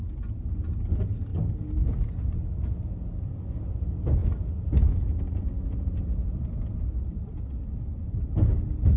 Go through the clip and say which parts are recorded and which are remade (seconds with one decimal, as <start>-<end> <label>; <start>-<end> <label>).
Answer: 0.0-9.0 recorded